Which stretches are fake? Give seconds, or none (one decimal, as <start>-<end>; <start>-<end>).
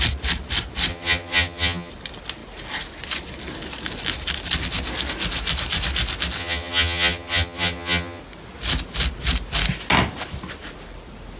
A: 0.9-1.9; 6.4-8.2